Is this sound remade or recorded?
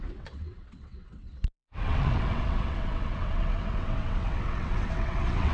remade